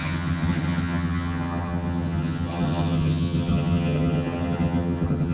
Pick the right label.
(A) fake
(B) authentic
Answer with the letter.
A